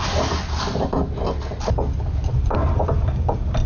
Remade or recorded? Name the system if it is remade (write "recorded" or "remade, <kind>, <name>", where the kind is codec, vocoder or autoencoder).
recorded